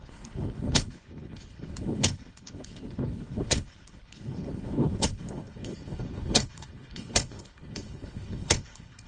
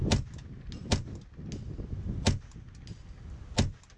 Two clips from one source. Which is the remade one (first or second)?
first